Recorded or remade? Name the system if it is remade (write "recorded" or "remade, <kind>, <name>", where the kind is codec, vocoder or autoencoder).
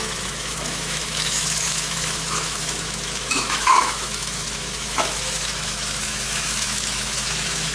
remade, autoencoder, DAC-VAE